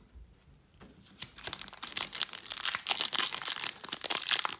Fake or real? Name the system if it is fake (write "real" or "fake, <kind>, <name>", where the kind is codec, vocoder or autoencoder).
real